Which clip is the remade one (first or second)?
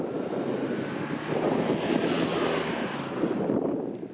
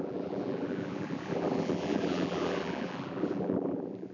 second